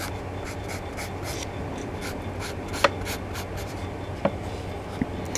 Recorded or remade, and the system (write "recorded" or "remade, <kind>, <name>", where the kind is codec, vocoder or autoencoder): recorded